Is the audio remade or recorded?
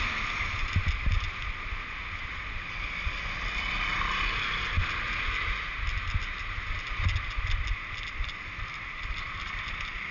recorded